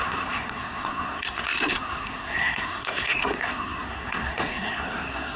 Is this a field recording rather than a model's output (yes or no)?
no